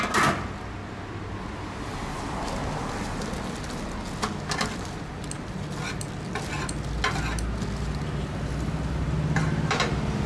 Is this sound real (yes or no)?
yes